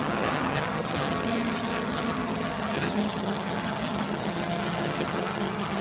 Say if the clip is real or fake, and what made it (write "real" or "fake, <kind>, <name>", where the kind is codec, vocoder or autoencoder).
fake, vocoder, HiFi-GAN